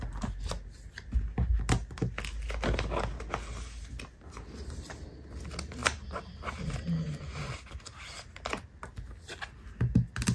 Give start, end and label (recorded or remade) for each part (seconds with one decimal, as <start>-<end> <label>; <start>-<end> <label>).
0.0-10.3 recorded